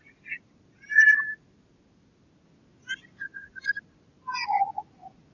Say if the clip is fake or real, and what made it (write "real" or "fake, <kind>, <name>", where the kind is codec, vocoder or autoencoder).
real